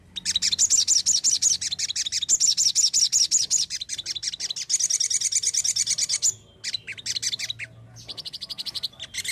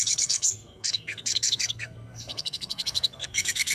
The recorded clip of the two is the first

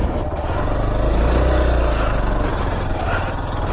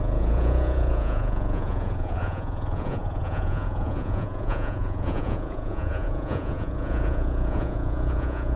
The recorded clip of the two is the first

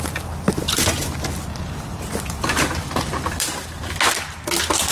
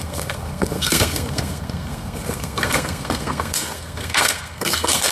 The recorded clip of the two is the first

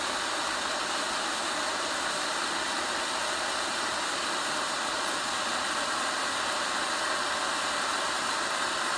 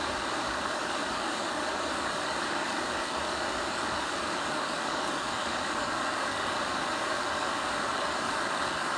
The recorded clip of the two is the first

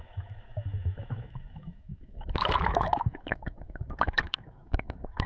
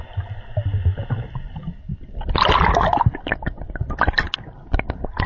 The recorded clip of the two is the second